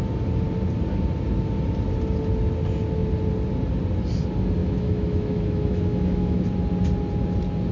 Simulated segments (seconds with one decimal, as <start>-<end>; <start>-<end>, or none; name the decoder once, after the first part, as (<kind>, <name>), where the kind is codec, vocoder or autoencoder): 4.6-6.4 (autoencoder, DAC-VAE)